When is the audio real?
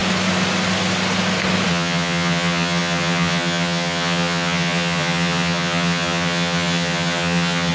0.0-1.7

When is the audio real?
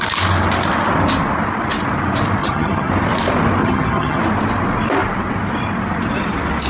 0.0-2.4; 2.9-3.6; 4.2-6.7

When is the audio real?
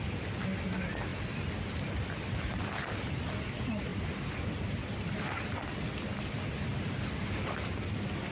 0.0-8.3